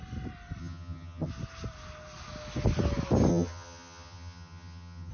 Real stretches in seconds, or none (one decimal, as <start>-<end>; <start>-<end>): 0.0-0.6; 1.3-3.3